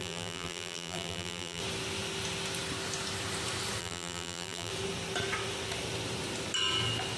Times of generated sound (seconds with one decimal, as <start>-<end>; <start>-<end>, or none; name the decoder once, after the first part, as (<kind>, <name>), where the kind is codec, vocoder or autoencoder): 0.0-1.6 (vocoder, BigVGAN v2); 3.8-4.7